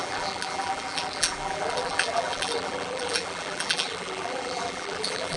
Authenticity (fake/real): fake